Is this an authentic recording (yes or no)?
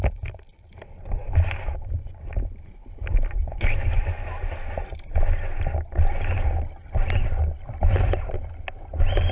yes